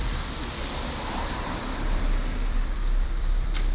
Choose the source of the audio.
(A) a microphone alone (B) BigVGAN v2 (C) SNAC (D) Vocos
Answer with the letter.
B